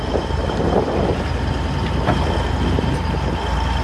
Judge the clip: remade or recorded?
remade